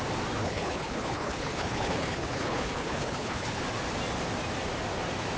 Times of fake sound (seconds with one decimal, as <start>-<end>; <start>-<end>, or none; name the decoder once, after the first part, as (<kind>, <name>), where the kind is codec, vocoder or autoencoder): 0.4-3.6 (codec, HILCodec)